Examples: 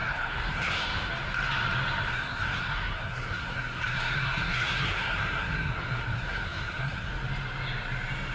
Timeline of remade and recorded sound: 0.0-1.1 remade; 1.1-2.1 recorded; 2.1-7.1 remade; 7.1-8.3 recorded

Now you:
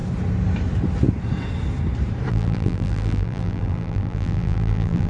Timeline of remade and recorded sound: 0.0-2.3 recorded; 2.3-5.1 remade

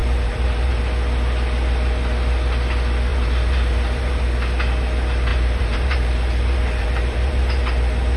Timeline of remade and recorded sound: 0.0-0.8 remade; 0.8-3.1 recorded; 3.1-4.2 remade; 4.2-5.3 recorded; 5.3-8.2 remade

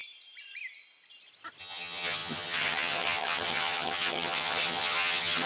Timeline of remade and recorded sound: 0.0-1.6 recorded; 1.6-5.5 remade

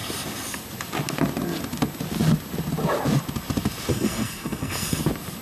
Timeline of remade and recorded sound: 0.0-3.9 recorded; 3.9-5.0 remade; 5.0-5.4 recorded

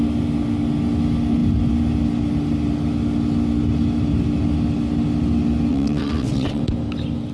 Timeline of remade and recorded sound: 0.0-5.7 recorded; 5.7-6.6 remade; 6.6-7.3 recorded

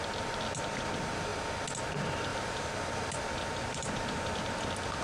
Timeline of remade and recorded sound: 0.0-2.3 recorded; 2.3-4.4 remade; 4.4-5.0 recorded